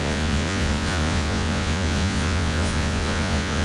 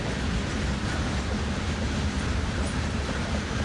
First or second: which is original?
second